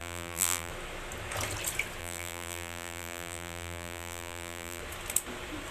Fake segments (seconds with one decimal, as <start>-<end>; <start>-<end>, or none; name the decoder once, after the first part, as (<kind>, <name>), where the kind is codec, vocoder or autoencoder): 0.0-0.7 (vocoder, BigVGAN v2); 2.0-4.8